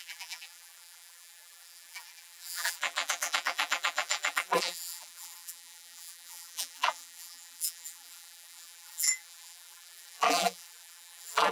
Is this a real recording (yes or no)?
no